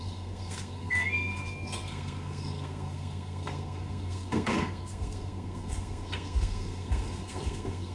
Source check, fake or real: fake